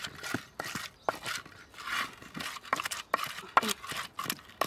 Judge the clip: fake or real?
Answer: real